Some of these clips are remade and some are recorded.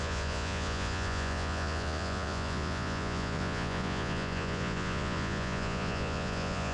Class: remade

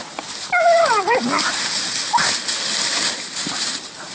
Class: recorded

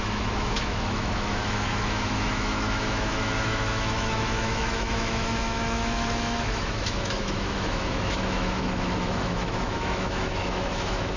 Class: remade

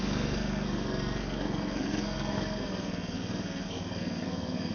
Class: remade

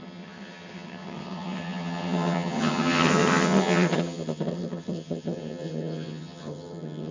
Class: remade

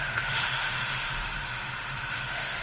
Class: remade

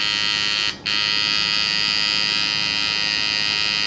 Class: recorded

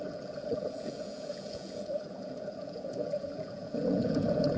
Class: remade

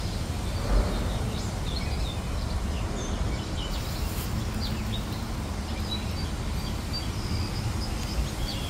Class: recorded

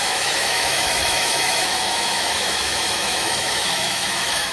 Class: remade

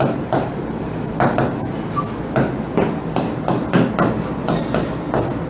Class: recorded